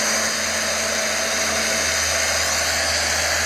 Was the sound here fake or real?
real